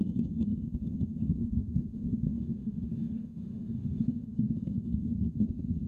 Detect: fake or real fake